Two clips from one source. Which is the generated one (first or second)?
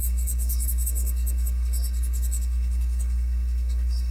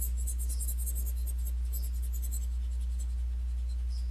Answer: first